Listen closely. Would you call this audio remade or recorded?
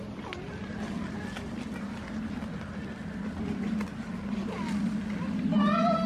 recorded